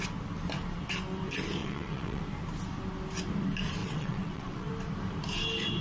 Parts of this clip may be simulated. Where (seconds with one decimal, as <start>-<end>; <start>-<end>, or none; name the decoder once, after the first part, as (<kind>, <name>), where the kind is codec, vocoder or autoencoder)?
1.6-2.2 (vocoder, WaveNeXt); 3.8-4.7